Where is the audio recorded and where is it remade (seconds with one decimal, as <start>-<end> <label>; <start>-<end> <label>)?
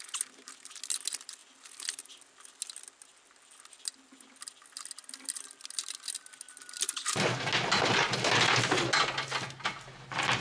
0.0-10.4 recorded